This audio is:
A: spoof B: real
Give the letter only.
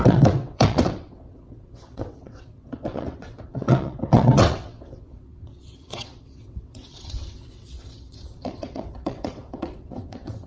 A